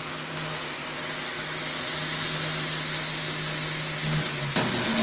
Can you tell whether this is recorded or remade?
recorded